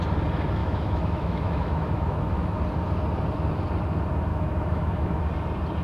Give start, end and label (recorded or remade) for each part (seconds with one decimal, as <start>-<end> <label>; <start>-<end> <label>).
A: 0.0-0.6 recorded; 0.6-2.6 remade; 2.6-4.3 recorded; 4.3-5.2 remade; 5.2-5.8 recorded